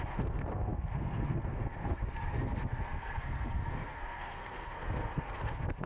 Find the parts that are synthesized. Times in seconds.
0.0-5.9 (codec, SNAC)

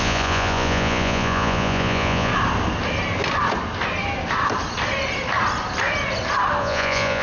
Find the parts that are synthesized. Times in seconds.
0.0-2.3 (vocoder, Vocos); 6.6-7.2

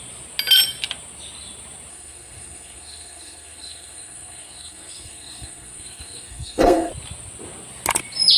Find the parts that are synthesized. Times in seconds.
1.9-6.9 (codec, SNAC)

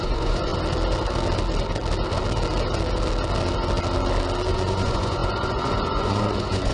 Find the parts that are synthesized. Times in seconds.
0.0-0.5 (vocoder, Vocos); 4.5-6.7

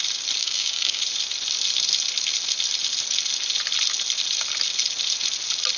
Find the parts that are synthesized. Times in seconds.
0.4-1.0 (codec, DAC)

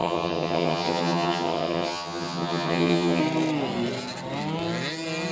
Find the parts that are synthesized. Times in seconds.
0.0-3.2 (vocoder, HiFi-GAN)